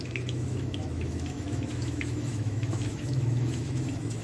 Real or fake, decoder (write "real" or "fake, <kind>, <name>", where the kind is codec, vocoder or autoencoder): fake, autoencoder, DAC-VAE